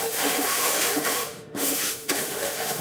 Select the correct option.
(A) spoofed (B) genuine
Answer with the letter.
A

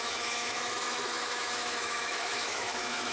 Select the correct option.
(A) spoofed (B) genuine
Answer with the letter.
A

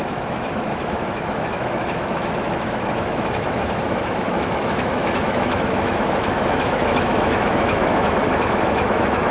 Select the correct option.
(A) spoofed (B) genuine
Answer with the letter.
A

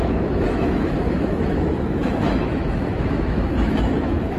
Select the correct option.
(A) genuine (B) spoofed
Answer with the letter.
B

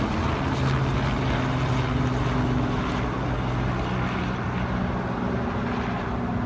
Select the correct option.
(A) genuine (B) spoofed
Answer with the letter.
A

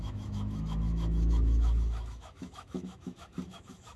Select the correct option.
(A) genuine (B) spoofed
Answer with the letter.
B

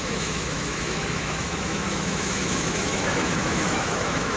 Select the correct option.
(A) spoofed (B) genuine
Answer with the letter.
A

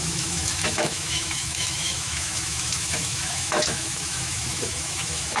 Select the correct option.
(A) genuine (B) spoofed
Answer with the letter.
B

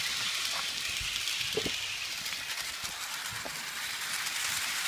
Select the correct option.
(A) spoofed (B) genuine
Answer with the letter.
B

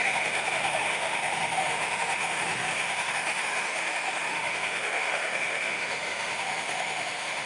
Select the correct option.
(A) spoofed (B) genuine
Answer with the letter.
A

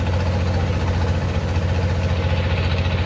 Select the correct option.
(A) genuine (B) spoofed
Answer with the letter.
A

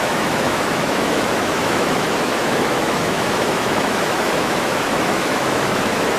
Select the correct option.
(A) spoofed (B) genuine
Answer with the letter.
A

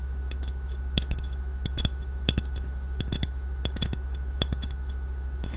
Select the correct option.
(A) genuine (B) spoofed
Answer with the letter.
B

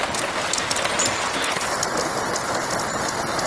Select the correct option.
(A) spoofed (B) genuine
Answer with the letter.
B